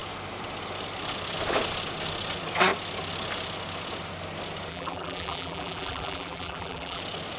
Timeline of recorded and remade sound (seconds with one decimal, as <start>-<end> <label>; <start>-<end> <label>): 0.0-4.7 recorded; 4.7-7.0 remade; 7.0-7.4 recorded